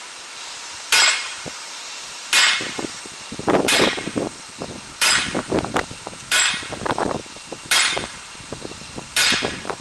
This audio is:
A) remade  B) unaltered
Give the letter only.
A